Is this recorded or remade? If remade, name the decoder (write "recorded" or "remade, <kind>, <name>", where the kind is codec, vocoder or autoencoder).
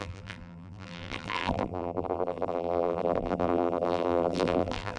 remade, vocoder, BigVGAN v2